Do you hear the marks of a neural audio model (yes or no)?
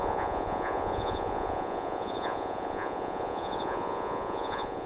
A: yes